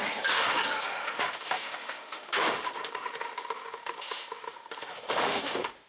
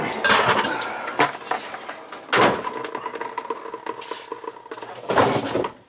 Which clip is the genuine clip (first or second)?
second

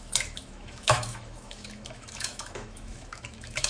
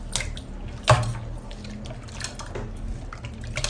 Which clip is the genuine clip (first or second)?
second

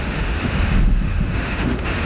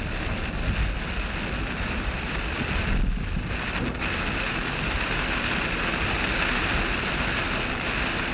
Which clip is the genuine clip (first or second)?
second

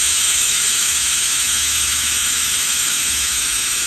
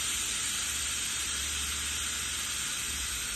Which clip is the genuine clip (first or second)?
second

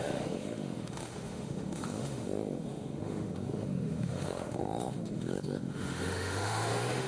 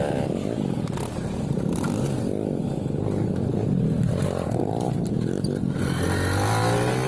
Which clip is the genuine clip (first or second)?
second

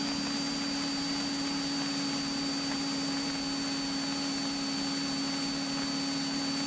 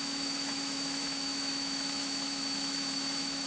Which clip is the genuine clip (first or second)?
first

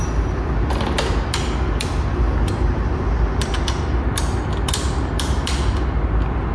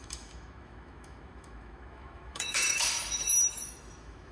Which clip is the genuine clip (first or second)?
first